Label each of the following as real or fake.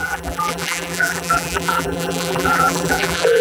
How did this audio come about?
fake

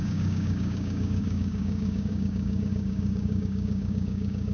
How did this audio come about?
fake